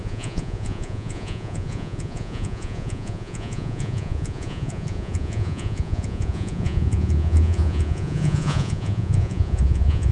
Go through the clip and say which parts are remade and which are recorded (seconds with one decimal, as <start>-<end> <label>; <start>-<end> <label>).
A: 0.0-10.1 remade